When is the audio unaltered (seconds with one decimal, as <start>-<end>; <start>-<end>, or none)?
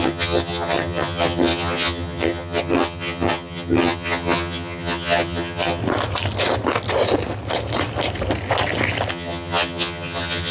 5.8-9.1